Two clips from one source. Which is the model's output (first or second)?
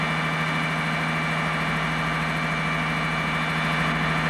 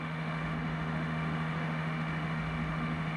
second